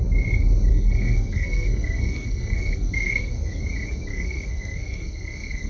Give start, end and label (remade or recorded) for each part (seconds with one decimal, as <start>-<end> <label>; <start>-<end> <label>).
0.0-0.7 recorded; 0.7-3.5 remade; 3.5-4.1 recorded; 4.1-5.7 remade